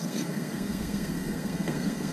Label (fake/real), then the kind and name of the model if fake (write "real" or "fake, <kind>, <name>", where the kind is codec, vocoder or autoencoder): fake, codec, SNAC